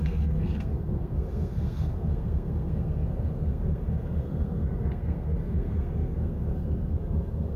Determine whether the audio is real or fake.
fake